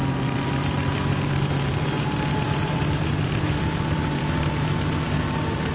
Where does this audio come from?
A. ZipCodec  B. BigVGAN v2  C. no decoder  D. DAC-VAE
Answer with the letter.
B